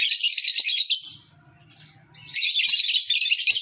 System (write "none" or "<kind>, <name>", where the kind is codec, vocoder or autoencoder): none